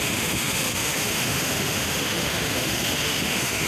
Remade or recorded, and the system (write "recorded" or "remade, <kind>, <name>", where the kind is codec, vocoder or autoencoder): remade, autoencoder, DAC-VAE